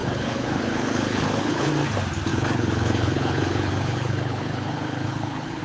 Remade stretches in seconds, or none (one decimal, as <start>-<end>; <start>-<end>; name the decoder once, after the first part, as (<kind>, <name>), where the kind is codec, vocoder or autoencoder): 0.0-1.7 (codec, HILCodec); 2.3-5.6